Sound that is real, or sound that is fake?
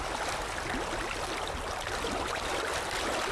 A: real